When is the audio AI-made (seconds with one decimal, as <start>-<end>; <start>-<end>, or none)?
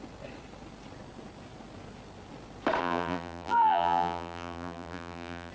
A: 2.8-5.5